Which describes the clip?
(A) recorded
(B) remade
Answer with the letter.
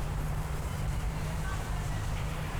B